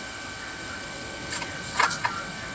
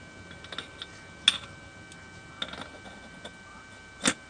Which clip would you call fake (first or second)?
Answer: first